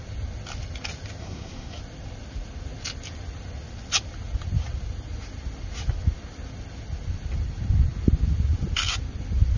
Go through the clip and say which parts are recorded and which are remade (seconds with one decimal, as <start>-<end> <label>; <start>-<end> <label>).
0.0-1.2 recorded; 1.2-1.8 remade; 1.8-9.6 recorded